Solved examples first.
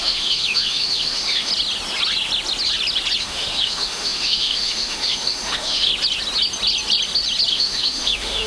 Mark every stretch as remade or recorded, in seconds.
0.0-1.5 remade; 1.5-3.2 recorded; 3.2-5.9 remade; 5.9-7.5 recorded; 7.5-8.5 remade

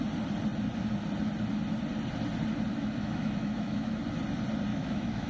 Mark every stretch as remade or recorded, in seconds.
0.0-2.7 recorded; 2.7-4.0 remade; 4.0-4.7 recorded; 4.7-5.3 remade

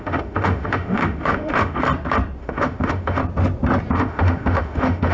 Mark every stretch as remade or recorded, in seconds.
0.0-1.8 remade; 1.8-2.4 recorded; 2.4-3.2 remade; 3.2-3.9 recorded; 3.9-5.1 remade

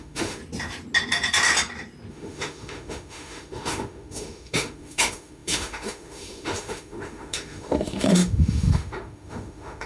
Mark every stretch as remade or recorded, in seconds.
0.0-0.4 remade; 0.4-2.1 recorded; 2.1-9.9 remade

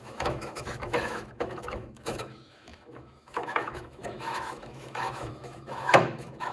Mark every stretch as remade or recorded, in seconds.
0.0-6.5 remade